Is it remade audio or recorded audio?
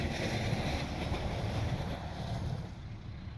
recorded